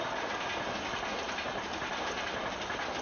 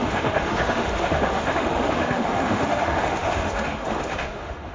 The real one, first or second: first